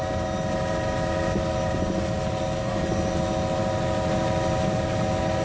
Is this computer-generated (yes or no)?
no